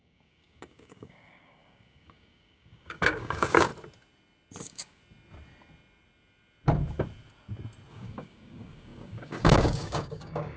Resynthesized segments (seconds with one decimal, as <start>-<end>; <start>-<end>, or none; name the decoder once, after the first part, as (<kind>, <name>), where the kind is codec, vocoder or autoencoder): 0.0-3.7 (codec, DAC); 4.6-5.0; 7.9-10.6